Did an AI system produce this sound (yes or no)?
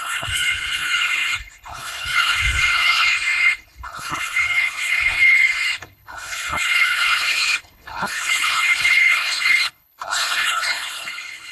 yes